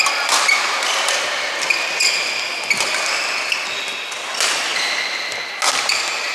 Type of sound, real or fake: real